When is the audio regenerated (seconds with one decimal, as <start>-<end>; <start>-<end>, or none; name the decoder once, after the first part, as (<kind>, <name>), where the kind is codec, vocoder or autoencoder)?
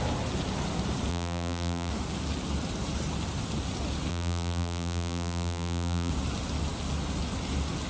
1.1-1.9 (vocoder, BigVGAN v2); 4.1-6.1